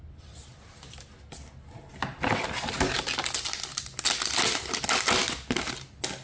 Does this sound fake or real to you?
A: real